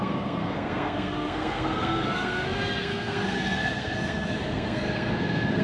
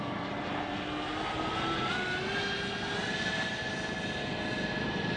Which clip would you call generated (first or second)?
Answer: first